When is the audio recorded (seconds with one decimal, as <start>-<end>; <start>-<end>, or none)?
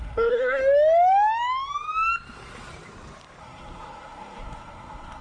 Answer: 0.6-3.4